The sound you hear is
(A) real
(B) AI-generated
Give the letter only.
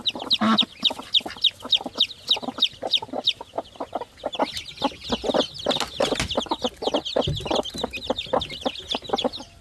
A